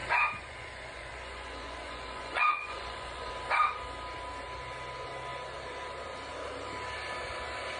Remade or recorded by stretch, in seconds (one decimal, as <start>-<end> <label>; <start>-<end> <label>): 0.0-3.3 remade; 3.3-7.8 recorded